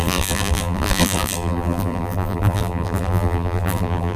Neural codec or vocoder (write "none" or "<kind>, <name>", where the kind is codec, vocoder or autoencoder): vocoder, BigVGAN v2